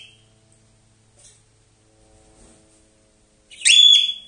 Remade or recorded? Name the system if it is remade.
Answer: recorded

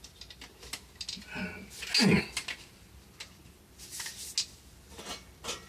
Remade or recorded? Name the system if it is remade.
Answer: recorded